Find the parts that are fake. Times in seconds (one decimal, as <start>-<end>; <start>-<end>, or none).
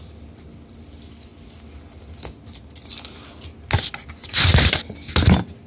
none